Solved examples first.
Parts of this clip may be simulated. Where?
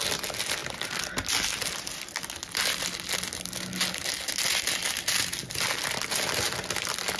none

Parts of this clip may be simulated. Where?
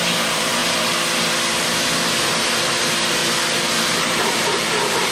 0.0-0.6 (vocoder, BigVGAN v2); 2.2-3.2; 4.0-5.1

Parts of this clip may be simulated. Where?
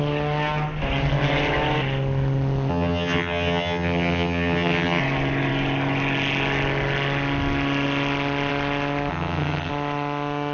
2.7-5.0 (vocoder, HiFi-GAN); 9.1-9.7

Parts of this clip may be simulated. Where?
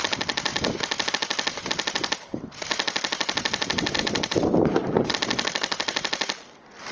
4.0-5.1 (vocoder, BigVGAN v2)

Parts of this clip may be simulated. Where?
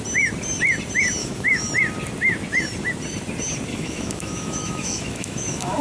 1.2-1.7 (autoencoder, DAC-VAE); 3.7-5.8